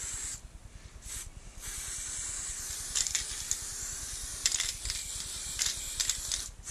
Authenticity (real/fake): real